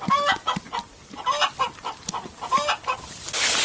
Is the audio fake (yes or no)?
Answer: no